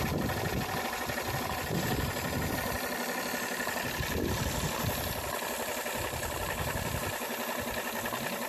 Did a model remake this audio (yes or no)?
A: no